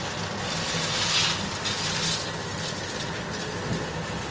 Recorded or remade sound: recorded